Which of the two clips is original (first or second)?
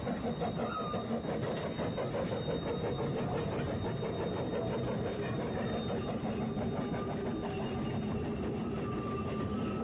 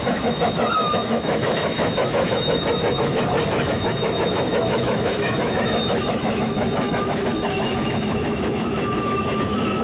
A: first